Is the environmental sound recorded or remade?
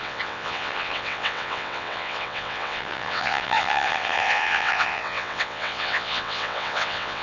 remade